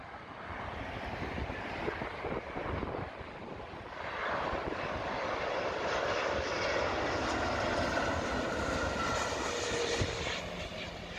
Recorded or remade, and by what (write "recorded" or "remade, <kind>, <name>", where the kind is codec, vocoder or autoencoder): recorded